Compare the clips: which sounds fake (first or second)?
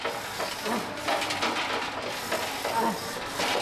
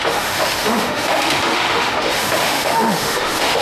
second